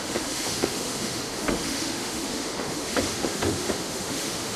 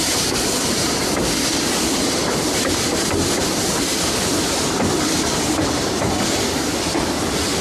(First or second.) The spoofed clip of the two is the first